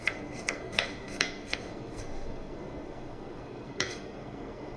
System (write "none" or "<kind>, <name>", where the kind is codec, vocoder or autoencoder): codec, SNAC